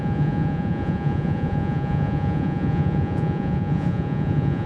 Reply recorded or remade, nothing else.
remade